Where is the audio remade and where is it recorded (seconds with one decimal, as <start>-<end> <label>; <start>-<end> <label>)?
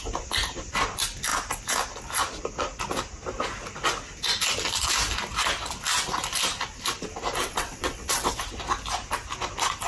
0.0-7.4 recorded; 7.4-8.4 remade; 8.4-9.9 recorded